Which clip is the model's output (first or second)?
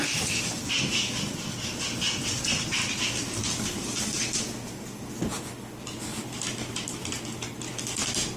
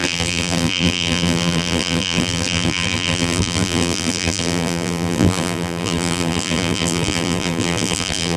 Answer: second